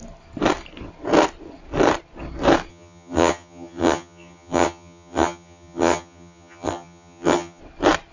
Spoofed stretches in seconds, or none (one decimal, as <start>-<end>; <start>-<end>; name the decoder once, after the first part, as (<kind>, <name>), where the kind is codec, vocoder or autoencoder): 2.7-7.6 (vocoder, HiFi-GAN)